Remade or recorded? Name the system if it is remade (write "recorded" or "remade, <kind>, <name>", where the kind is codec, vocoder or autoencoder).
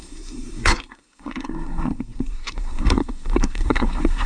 remade, codec, SNAC